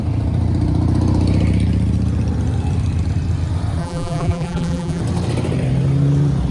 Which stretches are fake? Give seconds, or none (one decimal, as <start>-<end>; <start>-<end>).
3.8-5.0